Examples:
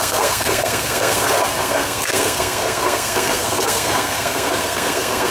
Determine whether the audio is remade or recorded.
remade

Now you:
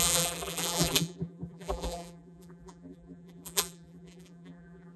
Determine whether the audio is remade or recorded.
remade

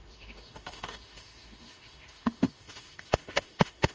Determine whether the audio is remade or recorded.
remade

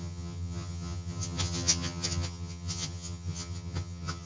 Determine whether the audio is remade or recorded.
remade